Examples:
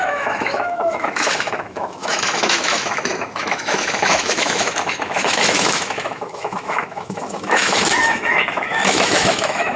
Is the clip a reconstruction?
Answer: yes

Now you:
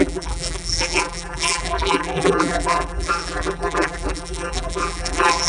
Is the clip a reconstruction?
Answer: yes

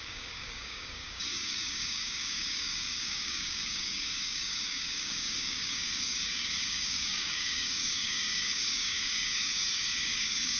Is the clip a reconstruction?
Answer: yes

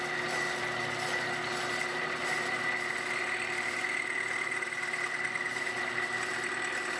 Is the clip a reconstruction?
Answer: no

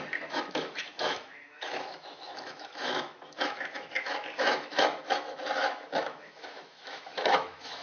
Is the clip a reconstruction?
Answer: yes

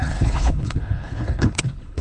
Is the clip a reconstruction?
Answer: yes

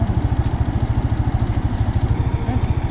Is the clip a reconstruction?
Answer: no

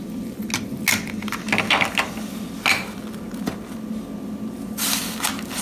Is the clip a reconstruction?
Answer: no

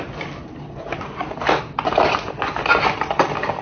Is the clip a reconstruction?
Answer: no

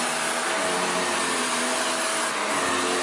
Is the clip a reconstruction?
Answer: no